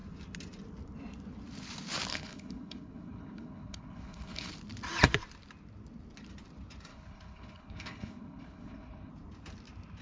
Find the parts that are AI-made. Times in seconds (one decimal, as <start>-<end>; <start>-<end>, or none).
2.1-4.5; 6.9-9.1